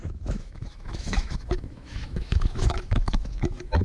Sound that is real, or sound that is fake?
fake